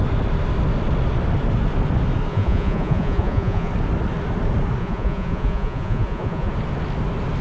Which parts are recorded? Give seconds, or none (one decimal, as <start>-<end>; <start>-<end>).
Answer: 0.0-2.3; 3.7-4.8; 6.5-7.4